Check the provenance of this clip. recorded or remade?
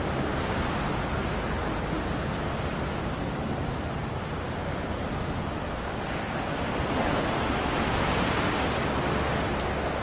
recorded